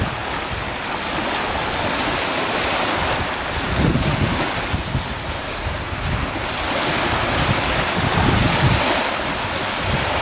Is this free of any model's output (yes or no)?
yes